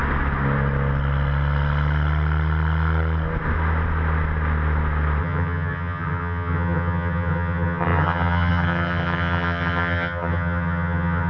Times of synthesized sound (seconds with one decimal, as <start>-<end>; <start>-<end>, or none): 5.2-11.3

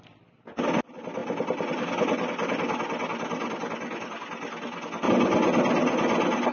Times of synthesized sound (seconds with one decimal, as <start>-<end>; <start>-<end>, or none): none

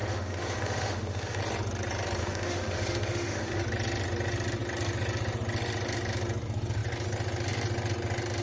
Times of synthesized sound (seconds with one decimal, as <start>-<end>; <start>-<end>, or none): 0.0-1.4; 2.2-3.6

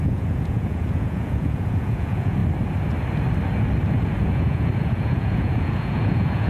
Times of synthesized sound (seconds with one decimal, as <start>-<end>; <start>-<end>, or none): 0.0-2.4; 3.9-6.5

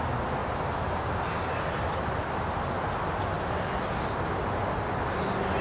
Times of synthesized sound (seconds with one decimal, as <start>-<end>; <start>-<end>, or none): none

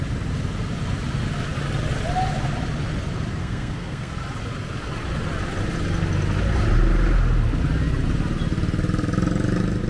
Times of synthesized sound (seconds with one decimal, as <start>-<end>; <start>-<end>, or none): 3.4-4.1

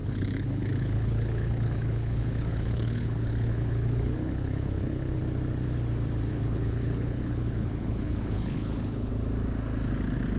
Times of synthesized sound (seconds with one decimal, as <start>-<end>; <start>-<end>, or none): 0.0-5.2; 6.3-9.1

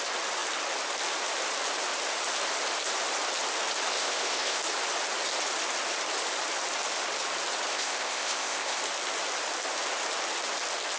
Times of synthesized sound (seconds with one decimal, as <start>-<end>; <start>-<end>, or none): 3.9-4.6; 7.7-8.8